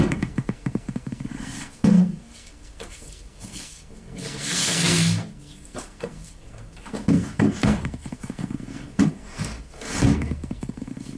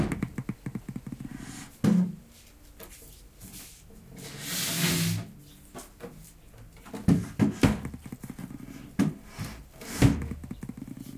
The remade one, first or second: first